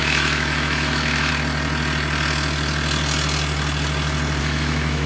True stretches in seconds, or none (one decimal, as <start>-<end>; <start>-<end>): 1.3-4.4